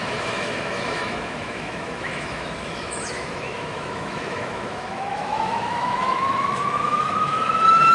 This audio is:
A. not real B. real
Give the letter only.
A